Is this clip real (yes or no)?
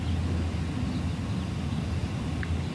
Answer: yes